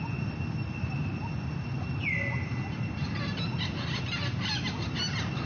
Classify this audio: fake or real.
real